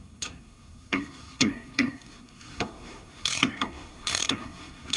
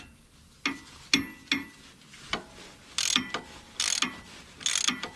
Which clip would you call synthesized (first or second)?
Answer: first